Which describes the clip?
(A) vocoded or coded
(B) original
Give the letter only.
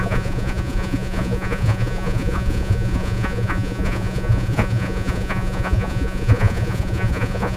A